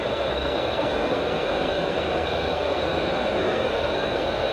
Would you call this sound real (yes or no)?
no